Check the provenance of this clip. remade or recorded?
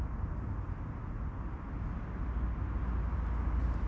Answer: recorded